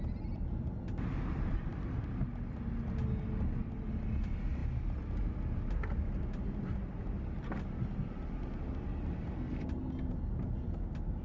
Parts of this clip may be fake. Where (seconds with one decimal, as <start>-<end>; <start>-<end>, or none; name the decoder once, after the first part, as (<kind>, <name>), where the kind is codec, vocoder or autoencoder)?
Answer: none

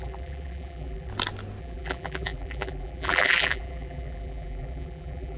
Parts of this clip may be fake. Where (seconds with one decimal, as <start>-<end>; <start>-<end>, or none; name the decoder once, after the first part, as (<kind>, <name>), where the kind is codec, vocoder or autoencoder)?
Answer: 0.0-1.1 (vocoder, BigVGAN v2); 1.6-5.4

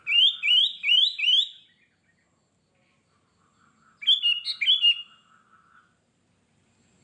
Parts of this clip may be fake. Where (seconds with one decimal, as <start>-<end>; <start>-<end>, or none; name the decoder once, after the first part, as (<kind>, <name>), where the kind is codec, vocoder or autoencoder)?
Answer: none

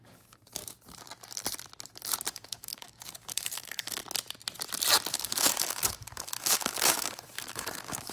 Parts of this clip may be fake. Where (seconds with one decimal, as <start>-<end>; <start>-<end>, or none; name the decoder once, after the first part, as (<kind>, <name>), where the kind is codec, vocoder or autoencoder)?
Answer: 0.0-0.6 (codec, DAC); 2.3-4.0; 5.1-8.1

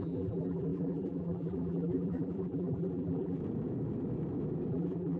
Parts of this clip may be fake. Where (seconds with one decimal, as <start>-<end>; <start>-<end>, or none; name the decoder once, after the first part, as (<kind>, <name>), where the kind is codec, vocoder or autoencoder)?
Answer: 0.0-3.4 (vocoder, BigVGAN v2); 4.7-5.2

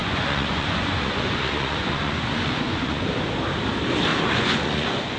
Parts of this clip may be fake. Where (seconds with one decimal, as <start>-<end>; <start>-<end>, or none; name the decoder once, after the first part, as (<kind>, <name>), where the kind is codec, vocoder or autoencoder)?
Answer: 0.0-3.1 (vocoder, Vocos); 4.1-5.2